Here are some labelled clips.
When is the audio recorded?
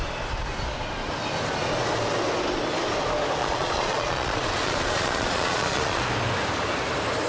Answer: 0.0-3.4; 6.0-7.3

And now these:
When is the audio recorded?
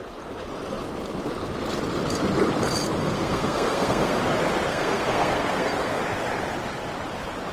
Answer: 0.0-3.0; 4.2-4.7; 6.0-7.5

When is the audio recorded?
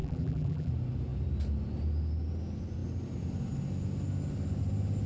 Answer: 0.7-5.1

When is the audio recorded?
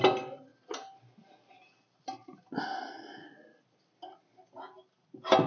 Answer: 0.0-5.5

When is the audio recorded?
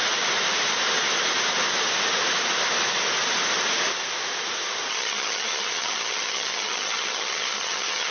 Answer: 0.0-4.9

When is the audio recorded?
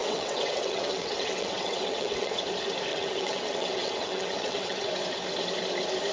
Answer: 2.4-2.9; 4.9-6.1